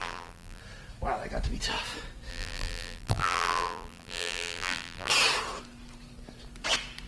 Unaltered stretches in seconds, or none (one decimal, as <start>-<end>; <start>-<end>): 0.6-2.3; 5.1-7.1